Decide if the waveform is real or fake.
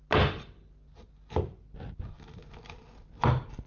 real